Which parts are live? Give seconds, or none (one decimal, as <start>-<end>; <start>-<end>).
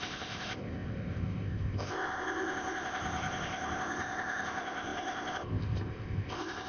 none